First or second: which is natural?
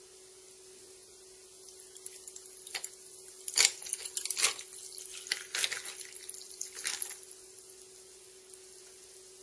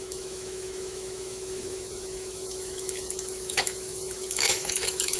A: first